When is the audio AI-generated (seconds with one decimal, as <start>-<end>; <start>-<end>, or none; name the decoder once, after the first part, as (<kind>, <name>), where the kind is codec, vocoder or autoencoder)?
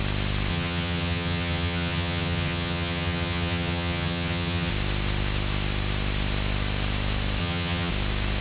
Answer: 0.5-4.7 (vocoder, HiFi-GAN); 7.4-7.9